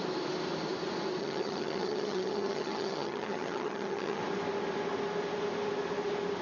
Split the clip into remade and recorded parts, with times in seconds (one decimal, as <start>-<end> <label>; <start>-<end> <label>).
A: 0.0-1.2 recorded; 1.2-4.2 remade; 4.2-6.4 recorded